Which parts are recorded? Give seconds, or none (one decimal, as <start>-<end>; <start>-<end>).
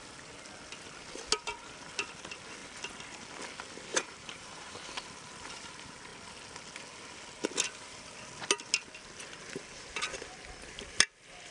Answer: 0.0-3.9; 4.9-11.5